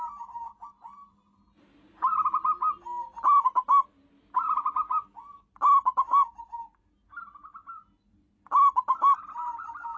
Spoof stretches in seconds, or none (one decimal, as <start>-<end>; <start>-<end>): none